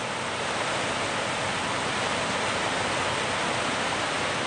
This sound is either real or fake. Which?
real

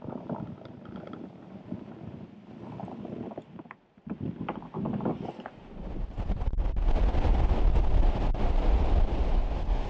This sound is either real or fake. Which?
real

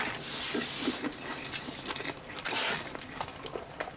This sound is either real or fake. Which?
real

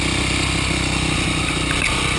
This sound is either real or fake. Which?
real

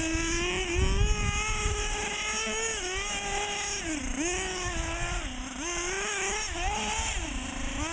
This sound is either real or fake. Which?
real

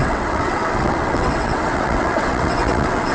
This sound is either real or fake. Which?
fake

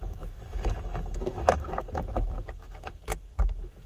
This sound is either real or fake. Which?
fake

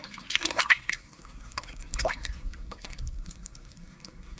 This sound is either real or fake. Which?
fake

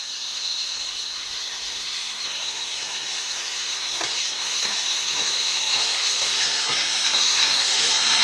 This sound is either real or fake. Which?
fake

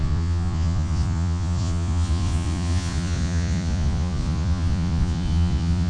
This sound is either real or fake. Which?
fake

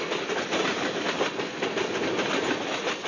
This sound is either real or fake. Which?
real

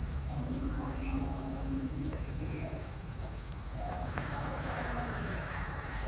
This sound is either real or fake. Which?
fake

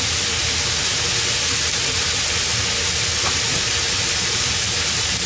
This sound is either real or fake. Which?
real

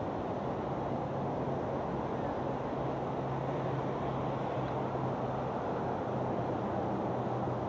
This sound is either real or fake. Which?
real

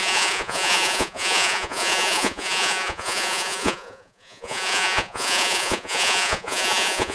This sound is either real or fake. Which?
fake